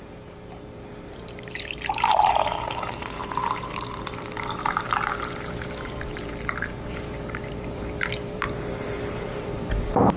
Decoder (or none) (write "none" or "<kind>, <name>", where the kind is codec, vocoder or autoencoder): vocoder, BigVGAN v2